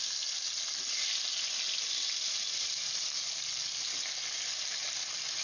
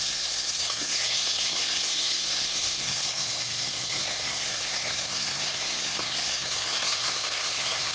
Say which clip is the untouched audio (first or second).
first